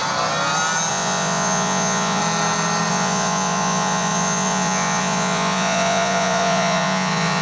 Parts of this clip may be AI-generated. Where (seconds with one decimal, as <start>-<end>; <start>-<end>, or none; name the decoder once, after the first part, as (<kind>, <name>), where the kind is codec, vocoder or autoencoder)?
0.9-2.2 (vocoder, Vocos); 2.9-7.4